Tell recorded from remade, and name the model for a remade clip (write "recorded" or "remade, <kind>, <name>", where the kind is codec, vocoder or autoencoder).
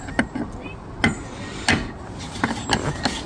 recorded